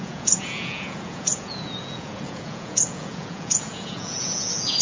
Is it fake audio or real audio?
fake